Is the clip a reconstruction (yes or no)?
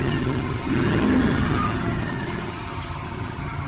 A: yes